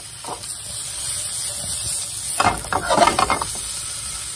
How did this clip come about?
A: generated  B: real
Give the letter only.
B